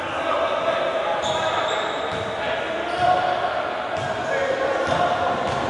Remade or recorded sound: recorded